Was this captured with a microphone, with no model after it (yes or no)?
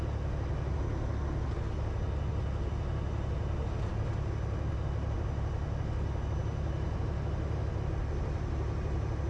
yes